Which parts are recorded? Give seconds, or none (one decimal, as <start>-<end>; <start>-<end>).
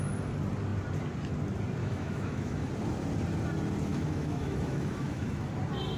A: 0.0-1.8; 2.7-3.9; 5.5-6.0